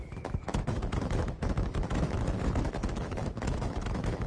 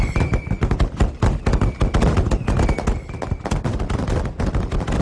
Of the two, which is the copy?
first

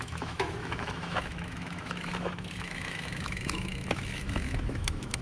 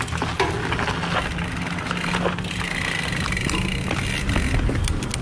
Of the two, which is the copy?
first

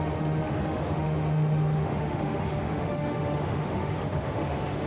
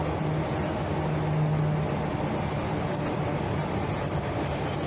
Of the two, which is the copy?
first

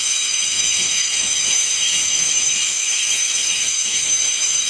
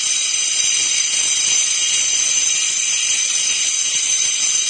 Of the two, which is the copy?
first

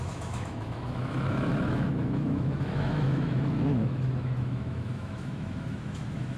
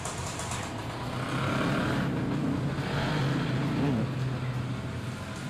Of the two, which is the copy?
first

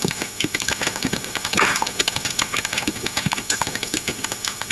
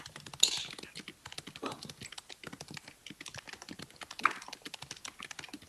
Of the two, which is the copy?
first